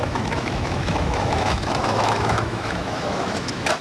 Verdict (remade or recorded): remade